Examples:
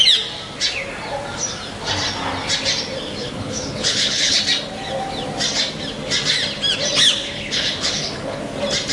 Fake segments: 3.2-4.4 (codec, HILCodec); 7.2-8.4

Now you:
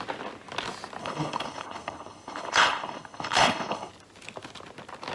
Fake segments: 1.0-3.9 (codec, HILCodec)